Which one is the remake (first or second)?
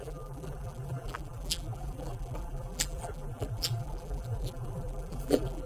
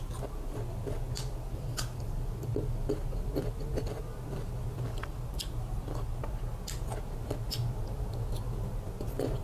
first